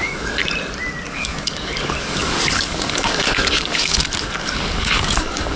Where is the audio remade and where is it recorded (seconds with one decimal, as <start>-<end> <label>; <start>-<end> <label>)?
0.0-0.4 remade; 0.4-1.1 recorded; 1.1-5.6 remade